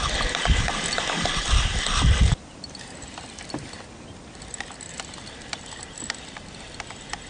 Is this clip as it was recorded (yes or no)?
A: yes